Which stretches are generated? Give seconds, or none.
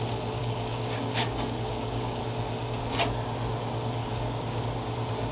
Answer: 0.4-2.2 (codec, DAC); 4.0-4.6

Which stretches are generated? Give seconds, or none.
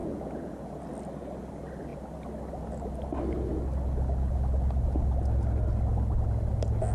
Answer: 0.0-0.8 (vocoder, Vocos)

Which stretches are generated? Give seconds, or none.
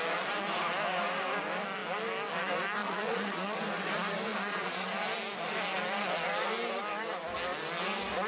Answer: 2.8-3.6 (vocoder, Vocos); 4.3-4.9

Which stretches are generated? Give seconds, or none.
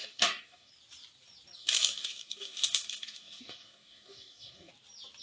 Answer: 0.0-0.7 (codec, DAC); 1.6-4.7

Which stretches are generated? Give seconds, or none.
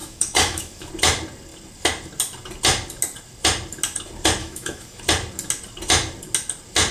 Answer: 0.0-0.9 (autoencoder, DAC-VAE); 4.4-5.0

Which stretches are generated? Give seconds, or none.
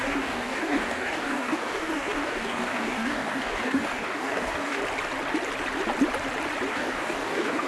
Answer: 0.0-4.8 (codec, DAC); 6.7-7.7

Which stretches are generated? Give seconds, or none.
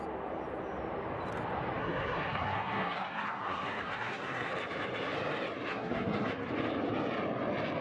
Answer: 1.8-4.5 (codec, SNAC); 5.7-6.5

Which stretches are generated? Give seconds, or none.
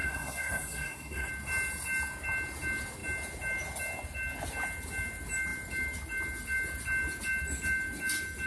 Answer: 0.0-1.3 (codec, SNAC)